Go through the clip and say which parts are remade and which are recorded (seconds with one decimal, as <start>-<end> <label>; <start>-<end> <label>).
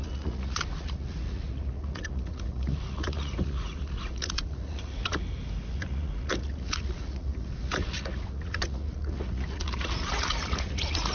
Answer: 0.0-5.2 remade; 5.2-5.7 recorded; 5.7-11.1 remade